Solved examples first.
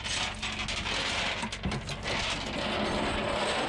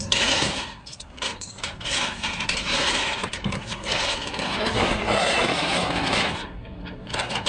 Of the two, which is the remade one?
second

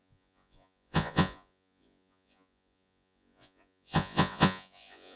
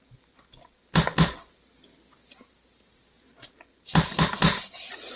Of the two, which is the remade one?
first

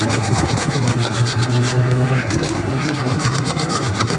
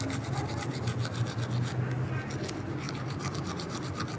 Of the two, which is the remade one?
first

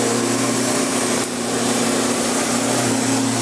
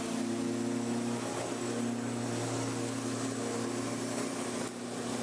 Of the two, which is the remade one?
first